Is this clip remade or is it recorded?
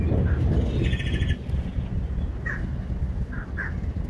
recorded